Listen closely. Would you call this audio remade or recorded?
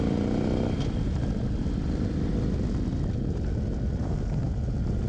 recorded